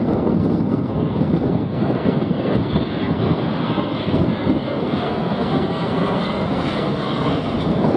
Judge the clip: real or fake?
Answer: fake